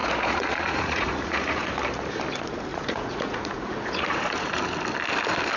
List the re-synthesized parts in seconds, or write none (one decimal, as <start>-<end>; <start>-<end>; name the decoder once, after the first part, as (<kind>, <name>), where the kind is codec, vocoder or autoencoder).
0.0-1.7 (vocoder, Vocos); 2.7-4.6